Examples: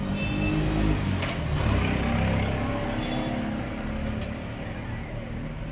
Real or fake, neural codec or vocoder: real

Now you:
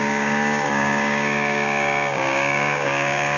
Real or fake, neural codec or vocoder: fake, codec, DAC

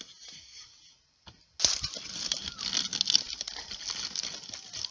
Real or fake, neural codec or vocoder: real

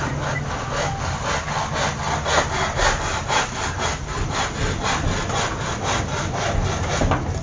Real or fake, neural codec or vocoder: real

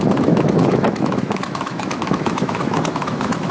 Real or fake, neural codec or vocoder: fake, autoencoder, DAC-VAE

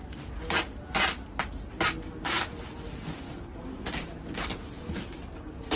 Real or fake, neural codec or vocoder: real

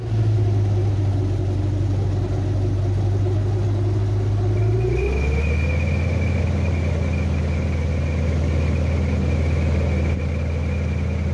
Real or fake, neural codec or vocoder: real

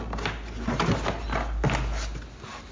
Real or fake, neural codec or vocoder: real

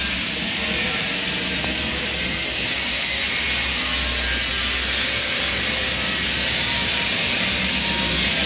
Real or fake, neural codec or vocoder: real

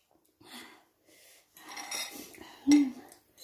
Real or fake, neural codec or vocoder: real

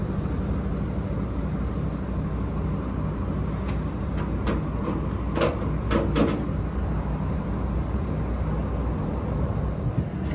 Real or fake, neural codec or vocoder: real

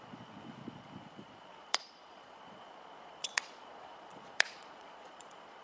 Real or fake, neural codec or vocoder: fake, vocoder, Vocos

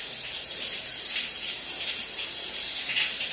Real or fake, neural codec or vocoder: fake, vocoder, BigVGAN v2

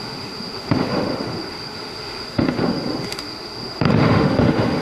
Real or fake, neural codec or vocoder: fake, autoencoder, DAC-VAE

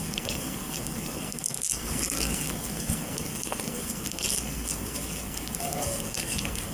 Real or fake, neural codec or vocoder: fake, codec, SNAC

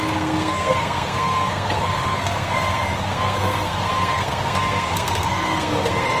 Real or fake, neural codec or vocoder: fake, codec, SNAC